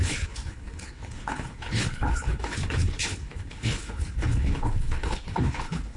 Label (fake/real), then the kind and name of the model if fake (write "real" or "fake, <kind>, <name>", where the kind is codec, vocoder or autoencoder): fake, codec, HILCodec